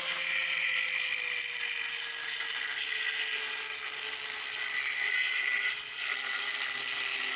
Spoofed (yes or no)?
no